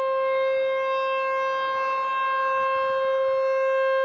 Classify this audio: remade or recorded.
recorded